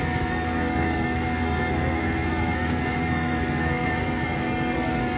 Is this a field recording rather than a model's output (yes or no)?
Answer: no